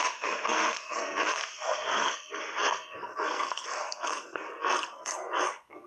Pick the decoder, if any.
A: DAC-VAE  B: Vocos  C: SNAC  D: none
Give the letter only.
C